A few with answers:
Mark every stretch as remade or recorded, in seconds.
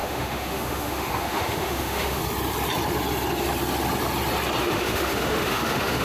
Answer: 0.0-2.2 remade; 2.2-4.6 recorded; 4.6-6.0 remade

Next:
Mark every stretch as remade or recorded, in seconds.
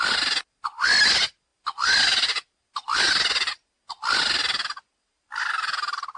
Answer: 0.0-6.2 recorded